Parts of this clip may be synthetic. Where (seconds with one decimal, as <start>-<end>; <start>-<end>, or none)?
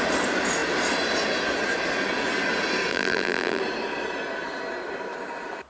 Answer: 2.9-3.6